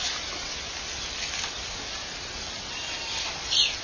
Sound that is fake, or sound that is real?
real